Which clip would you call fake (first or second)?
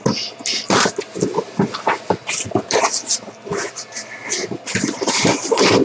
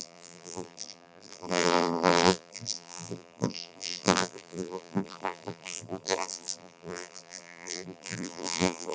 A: second